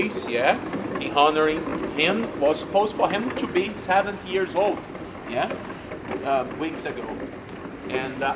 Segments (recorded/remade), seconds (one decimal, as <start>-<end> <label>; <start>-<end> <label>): 0.0-8.4 recorded